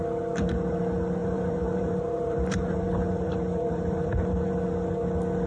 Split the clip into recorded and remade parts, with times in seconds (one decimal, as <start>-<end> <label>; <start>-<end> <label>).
0.0-1.2 recorded; 1.2-4.5 remade; 4.5-5.5 recorded